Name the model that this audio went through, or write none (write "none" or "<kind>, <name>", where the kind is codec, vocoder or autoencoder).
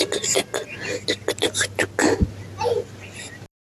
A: none